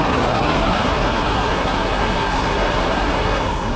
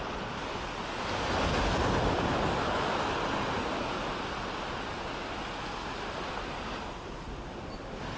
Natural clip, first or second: second